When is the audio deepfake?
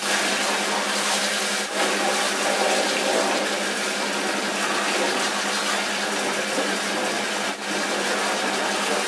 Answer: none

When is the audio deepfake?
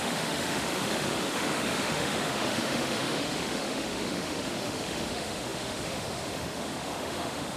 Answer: 0.0-7.6 (autoencoder, DAC-VAE)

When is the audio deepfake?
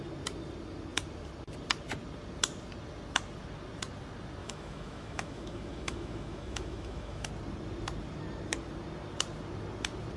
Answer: 4.4-7.3 (autoencoder, DAC-VAE)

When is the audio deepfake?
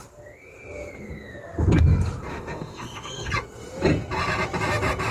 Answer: 2.3-3.3 (autoencoder, DAC-VAE)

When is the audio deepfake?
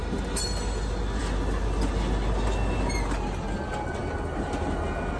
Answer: none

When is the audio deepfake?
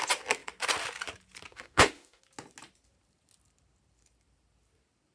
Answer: 1.5-2.2 (autoencoder, DAC-VAE)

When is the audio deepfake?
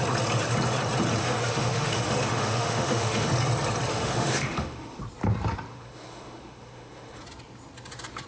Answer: 1.2-3.3 (autoencoder, DAC-VAE); 3.9-5.0; 5.7-7.2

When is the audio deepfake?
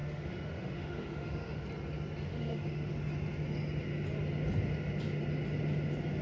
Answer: 0.0-1.6 (autoencoder, DAC-VAE); 2.3-2.9